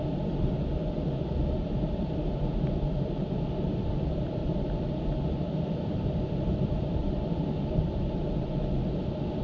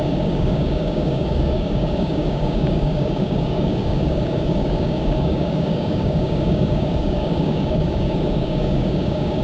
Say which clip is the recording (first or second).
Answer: first